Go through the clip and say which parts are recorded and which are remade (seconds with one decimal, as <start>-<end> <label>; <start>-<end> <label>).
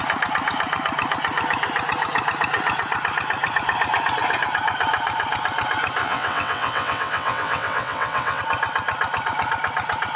0.0-6.0 recorded; 6.0-8.4 remade; 8.4-10.2 recorded